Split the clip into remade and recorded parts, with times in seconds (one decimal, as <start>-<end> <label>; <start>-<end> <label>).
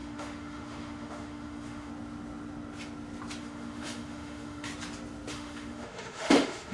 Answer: 0.0-1.9 remade; 1.9-3.4 recorded; 3.4-4.7 remade; 4.7-5.3 recorded; 5.3-6.7 remade